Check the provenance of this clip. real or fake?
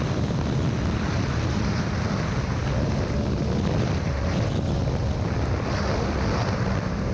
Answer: fake